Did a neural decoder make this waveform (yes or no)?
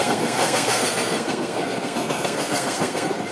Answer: yes